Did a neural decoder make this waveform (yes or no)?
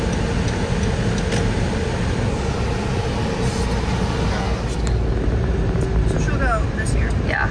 no